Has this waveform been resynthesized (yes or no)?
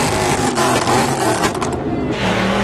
no